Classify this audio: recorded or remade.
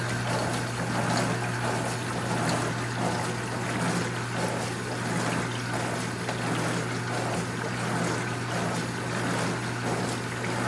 recorded